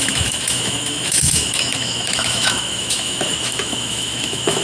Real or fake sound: fake